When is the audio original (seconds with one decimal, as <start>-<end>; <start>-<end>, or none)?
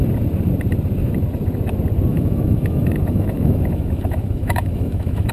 0.0-2.1